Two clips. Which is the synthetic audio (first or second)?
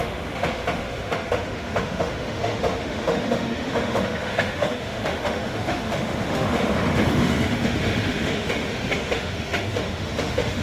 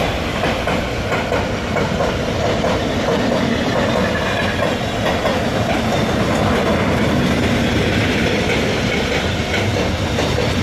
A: first